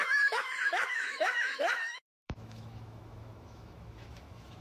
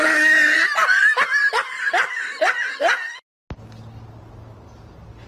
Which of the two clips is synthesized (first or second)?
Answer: first